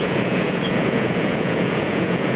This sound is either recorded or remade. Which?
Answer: remade